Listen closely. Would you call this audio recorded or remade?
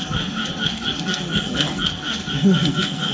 remade